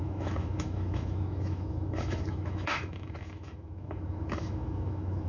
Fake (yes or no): yes